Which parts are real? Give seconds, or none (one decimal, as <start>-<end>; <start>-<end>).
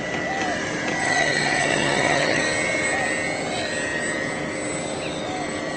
0.0-1.0; 2.4-5.8